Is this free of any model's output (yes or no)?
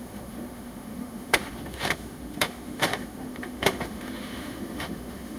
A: no